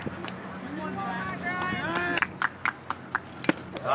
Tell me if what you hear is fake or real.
real